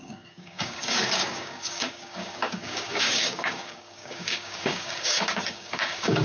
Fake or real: fake